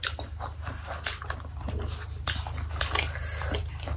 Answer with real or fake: real